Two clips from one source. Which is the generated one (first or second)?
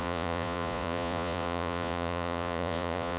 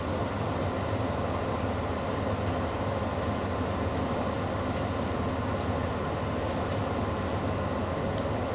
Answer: first